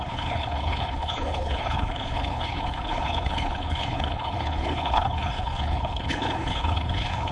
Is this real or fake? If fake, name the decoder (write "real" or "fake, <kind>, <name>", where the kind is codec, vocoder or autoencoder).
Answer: fake, codec, HILCodec